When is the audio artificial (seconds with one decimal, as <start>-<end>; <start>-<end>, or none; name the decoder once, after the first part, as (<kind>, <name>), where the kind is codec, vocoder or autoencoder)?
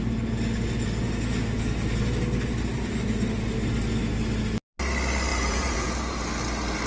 5.3-5.9 (vocoder, Vocos)